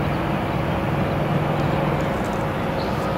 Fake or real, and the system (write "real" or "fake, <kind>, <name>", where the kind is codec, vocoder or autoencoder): real